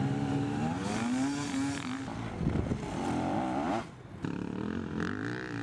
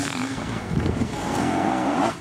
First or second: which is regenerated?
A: second